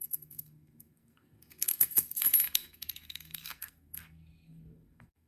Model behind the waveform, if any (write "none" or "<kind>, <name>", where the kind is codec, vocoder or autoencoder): codec, SNAC